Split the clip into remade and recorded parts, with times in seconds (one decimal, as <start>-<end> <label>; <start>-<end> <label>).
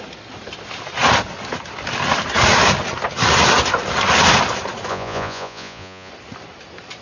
0.0-4.9 recorded; 4.9-6.1 remade; 6.1-7.0 recorded